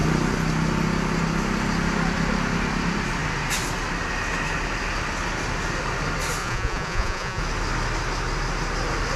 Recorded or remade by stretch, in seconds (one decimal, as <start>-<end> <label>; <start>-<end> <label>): 0.0-6.4 recorded; 6.4-7.4 remade; 7.4-9.2 recorded